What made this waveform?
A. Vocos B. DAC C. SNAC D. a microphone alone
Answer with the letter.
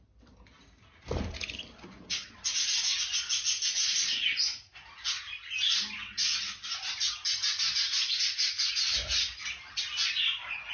D